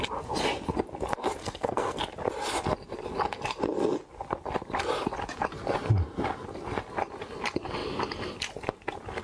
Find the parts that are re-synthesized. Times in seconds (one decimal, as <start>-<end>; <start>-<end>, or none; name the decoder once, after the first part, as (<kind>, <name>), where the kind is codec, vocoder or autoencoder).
1.4-2.0 (codec, SNAC)